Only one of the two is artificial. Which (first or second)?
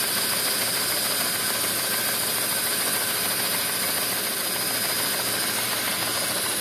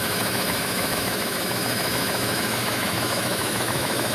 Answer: second